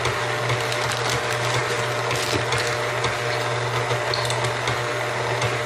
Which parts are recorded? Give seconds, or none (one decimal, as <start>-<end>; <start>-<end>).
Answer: 0.0-5.7

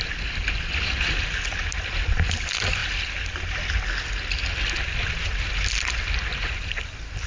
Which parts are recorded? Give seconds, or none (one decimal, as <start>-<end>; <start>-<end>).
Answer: 0.0-7.3

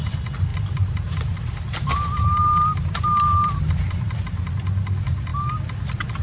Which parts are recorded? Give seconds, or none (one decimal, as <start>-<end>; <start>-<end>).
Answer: 0.0-0.5; 4.2-6.2

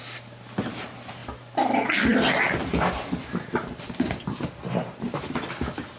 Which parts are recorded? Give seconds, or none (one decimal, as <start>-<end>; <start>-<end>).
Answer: 0.0-2.6; 5.5-6.0

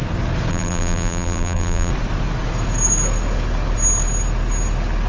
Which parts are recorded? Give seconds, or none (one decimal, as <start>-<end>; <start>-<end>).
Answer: 0.0-0.5; 1.9-5.1

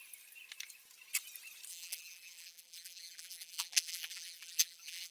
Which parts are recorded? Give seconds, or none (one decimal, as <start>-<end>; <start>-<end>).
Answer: 0.0-1.7

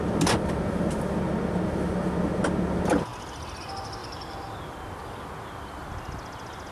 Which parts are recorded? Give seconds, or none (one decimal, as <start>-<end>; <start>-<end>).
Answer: 0.0-4.0; 4.8-6.7

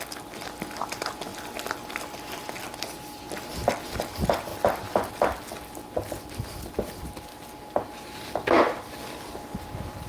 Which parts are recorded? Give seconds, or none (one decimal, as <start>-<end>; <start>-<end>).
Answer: 0.0-7.3; 8.3-10.1